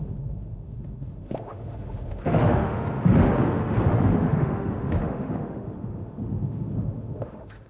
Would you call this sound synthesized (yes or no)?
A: yes